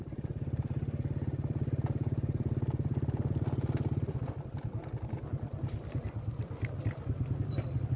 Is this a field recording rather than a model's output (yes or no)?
yes